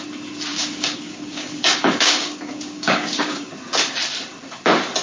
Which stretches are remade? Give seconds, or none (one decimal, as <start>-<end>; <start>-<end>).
0.5-3.5